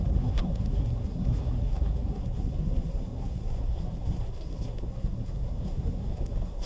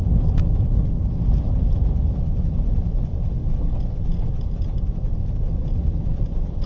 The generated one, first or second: first